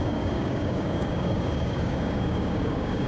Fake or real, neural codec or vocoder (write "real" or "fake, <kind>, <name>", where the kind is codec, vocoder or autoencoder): fake, codec, DAC